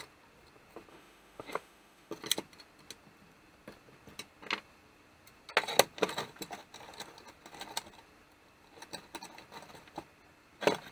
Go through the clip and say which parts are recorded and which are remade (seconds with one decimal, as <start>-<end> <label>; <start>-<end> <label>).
0.0-0.9 recorded; 0.9-2.1 remade; 2.1-10.9 recorded